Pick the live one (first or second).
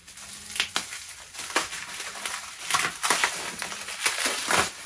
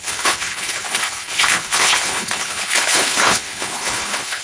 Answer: first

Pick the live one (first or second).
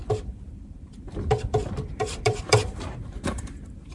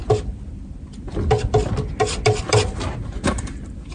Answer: second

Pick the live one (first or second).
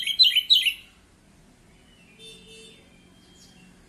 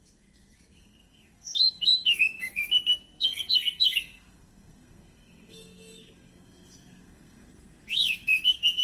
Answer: first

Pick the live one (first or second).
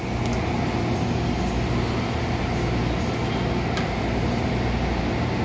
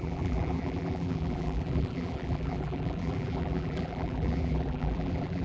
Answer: first